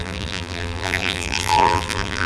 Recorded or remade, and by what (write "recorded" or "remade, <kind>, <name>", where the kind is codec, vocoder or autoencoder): remade, vocoder, BigVGAN v2